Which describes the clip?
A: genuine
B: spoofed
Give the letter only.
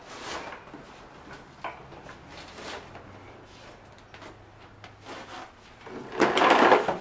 A